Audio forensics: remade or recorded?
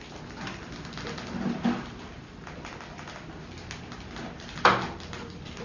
recorded